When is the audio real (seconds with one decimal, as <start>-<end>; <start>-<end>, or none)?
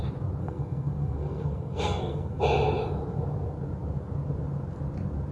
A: 0.0-0.4; 2.4-5.3